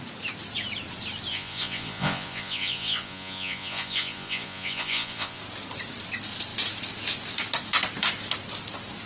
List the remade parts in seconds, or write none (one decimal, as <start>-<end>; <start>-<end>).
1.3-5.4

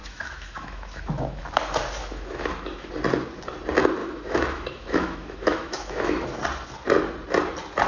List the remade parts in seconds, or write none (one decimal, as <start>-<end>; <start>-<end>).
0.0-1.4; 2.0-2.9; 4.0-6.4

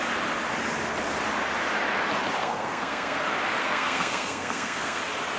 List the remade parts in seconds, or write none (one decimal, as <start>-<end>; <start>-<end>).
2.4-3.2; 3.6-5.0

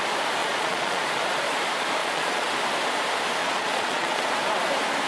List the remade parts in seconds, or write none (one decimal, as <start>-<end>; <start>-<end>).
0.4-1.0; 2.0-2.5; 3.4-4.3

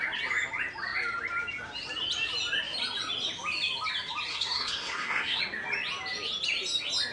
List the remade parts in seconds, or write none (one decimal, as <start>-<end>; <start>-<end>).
4.3-5.4